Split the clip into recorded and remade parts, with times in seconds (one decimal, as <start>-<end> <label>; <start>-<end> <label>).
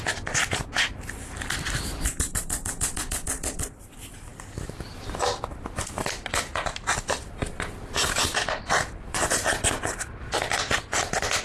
0.0-6.5 remade; 6.5-7.9 recorded; 7.9-11.4 remade